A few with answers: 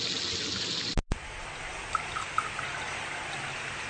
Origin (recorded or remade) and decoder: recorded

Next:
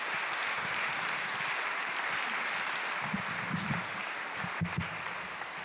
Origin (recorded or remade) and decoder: recorded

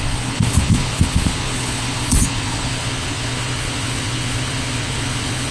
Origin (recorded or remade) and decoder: remade, vocoder, Vocos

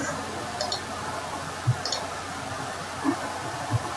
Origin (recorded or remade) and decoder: recorded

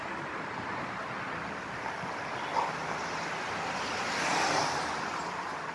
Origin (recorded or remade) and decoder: recorded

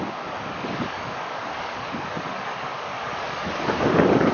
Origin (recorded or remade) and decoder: remade, codec, DAC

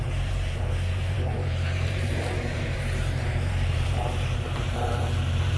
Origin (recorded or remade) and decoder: remade, vocoder, BigVGAN v2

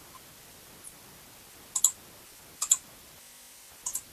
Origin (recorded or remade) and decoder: recorded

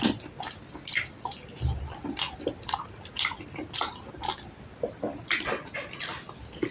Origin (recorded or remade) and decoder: recorded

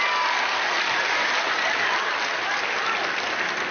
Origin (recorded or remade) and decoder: recorded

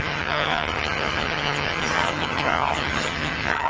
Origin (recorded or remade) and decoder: remade, vocoder, HiFi-GAN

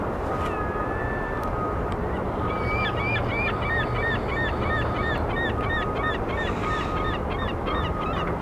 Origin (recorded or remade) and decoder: recorded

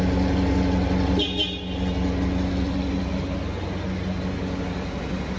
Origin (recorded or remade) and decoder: recorded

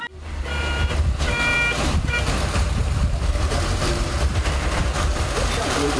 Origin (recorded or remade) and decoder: remade, vocoder, BigVGAN v2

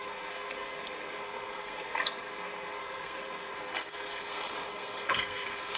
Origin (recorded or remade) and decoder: remade, codec, SNAC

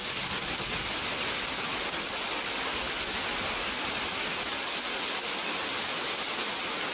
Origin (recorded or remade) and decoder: recorded